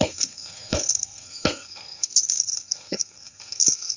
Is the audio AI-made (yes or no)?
yes